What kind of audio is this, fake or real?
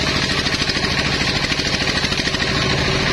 real